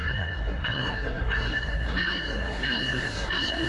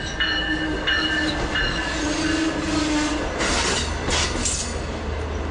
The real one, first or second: second